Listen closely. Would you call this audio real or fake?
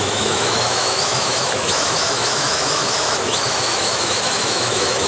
fake